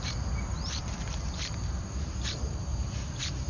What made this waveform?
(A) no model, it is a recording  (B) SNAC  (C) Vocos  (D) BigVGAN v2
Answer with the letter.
D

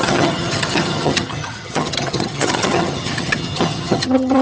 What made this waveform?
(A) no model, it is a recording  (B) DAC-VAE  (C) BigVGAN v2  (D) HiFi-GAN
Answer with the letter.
D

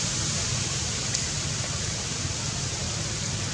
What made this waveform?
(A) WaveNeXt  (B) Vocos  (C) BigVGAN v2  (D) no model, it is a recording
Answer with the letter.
D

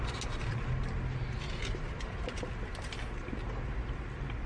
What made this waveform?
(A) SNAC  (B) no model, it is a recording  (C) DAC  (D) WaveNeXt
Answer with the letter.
B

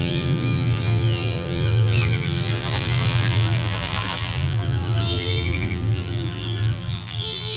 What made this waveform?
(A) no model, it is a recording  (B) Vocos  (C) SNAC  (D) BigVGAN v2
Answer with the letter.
D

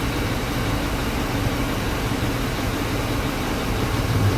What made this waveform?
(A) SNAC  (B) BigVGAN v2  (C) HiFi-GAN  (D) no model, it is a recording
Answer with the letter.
D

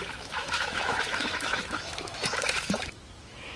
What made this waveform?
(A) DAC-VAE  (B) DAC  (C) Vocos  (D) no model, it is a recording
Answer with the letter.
A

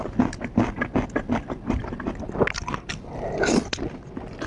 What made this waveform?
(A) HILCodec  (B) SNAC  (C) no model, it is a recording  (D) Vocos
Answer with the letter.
C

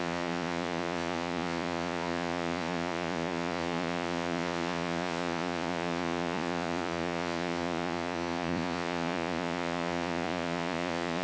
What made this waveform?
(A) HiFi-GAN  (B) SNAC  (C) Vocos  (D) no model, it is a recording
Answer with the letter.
C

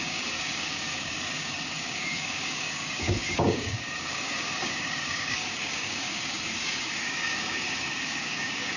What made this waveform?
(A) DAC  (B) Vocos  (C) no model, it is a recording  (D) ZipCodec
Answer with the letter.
A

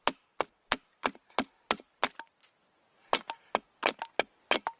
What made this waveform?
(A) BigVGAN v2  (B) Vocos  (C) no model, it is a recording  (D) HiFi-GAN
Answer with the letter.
C